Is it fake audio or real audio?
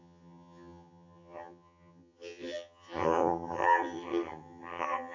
fake